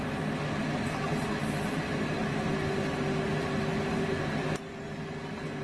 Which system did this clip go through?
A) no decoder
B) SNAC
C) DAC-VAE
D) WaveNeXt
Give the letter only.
A